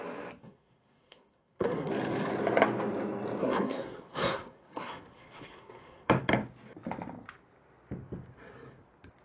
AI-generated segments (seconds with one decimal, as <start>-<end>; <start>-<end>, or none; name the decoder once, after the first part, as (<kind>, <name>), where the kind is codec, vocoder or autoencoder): 0.4-1.9 (codec, SNAC); 3.4-6.1